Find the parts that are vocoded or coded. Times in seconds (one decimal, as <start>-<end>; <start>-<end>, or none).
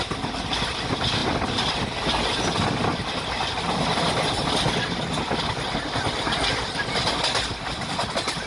none